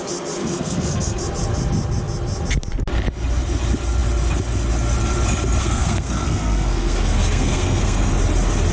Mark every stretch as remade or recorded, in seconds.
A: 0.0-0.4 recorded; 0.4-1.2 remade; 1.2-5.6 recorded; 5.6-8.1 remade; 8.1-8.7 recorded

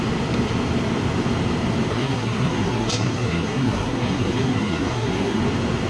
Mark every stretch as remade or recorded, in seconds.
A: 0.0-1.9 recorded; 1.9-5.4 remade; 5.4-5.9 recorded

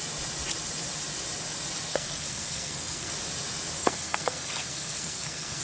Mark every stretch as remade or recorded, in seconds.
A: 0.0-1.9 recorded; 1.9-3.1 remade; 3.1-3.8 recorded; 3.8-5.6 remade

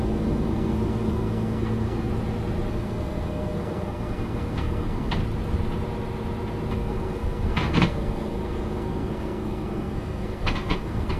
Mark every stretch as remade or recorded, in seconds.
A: 0.0-2.1 remade; 2.1-2.7 recorded; 2.7-5.2 remade; 5.2-6.7 recorded; 6.7-11.2 remade